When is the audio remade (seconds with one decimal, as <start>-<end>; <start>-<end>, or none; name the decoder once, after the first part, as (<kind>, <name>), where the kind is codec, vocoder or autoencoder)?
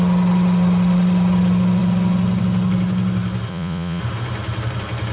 3.5-4.0 (vocoder, Vocos)